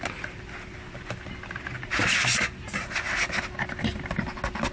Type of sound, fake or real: real